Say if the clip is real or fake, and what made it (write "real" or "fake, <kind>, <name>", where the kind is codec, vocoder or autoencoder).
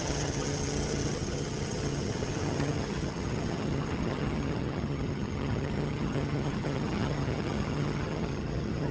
fake, vocoder, HiFi-GAN